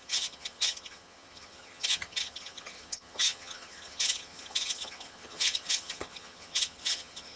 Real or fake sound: fake